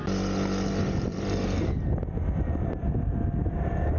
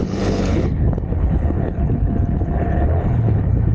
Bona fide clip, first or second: first